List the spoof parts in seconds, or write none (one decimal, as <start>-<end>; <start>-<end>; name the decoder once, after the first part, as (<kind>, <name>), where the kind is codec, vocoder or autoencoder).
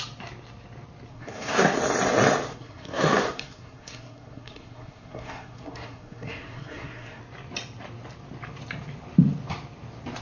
1.1-1.8 (codec, SNAC); 2.5-7.2